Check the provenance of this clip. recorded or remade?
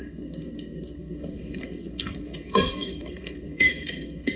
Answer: remade